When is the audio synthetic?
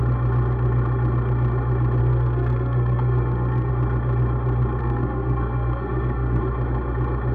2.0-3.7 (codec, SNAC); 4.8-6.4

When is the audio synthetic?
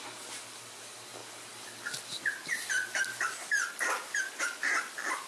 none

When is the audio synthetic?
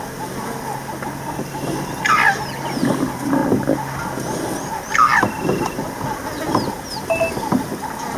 none